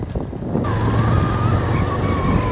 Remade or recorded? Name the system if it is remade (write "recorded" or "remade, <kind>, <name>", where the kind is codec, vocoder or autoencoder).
recorded